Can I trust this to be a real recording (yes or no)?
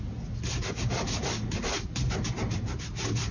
yes